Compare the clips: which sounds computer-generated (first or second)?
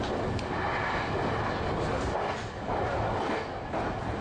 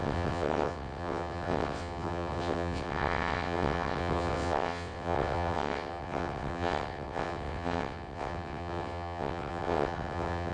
second